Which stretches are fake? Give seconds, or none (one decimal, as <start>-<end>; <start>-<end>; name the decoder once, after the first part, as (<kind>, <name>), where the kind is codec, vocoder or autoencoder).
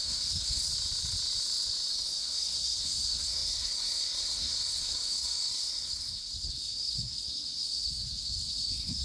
0.0-0.7 (codec, SNAC); 1.9-9.0